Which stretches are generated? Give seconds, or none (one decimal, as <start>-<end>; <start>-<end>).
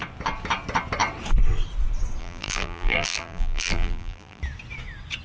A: 2.2-4.4